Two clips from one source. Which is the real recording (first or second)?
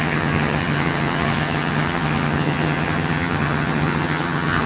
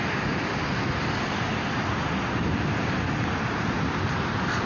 second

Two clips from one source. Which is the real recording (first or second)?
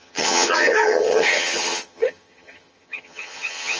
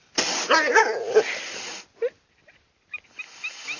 second